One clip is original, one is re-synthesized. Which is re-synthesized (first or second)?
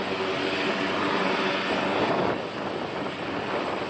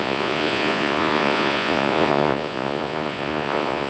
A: second